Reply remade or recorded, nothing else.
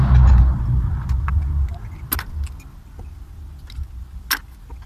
recorded